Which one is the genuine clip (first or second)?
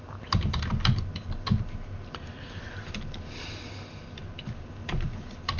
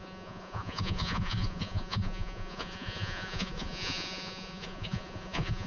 first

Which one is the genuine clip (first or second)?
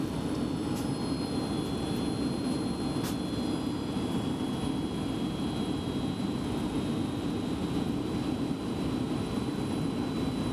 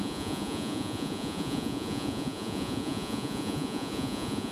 first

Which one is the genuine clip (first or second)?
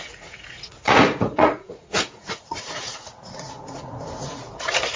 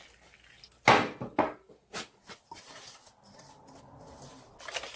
second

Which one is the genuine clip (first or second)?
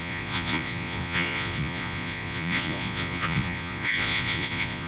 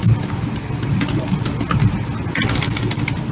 second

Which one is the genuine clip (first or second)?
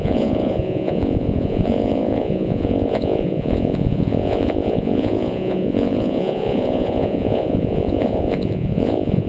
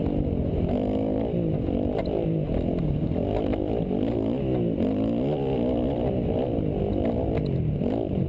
second